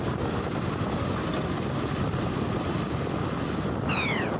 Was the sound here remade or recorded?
recorded